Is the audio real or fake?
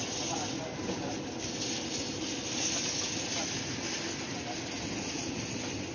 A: real